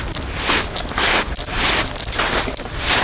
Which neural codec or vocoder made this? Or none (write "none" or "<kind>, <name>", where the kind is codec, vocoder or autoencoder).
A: none